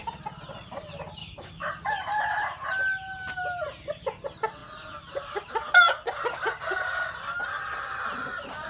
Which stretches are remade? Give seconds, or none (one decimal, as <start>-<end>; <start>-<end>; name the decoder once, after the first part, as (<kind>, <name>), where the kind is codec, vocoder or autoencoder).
1.2-1.7 (codec, DAC)